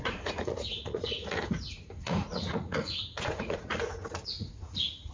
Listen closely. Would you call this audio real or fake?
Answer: fake